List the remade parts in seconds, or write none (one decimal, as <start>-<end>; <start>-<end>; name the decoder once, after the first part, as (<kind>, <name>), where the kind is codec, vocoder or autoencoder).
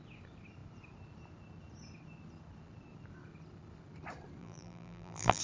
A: 4.4-5.4 (vocoder, BigVGAN v2)